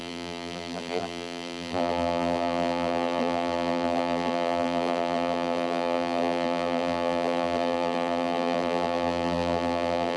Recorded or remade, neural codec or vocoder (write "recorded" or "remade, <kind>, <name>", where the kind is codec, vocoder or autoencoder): remade, vocoder, BigVGAN v2